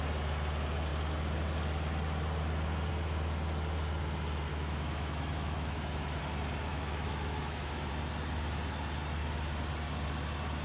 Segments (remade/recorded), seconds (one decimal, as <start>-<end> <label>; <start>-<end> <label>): 0.0-4.5 recorded; 4.5-6.2 remade; 6.2-6.7 recorded; 6.7-7.9 remade; 7.9-10.6 recorded